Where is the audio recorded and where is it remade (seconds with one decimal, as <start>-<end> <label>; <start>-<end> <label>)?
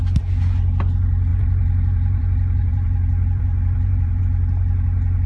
0.0-1.3 recorded; 1.3-4.2 remade; 4.2-5.3 recorded